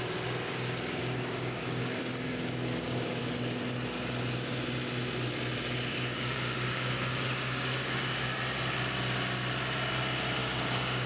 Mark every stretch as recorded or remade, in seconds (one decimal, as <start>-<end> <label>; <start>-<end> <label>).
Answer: 0.0-1.0 recorded; 1.0-3.2 remade; 3.2-5.9 recorded; 5.9-8.4 remade; 8.4-10.4 recorded; 10.4-11.1 remade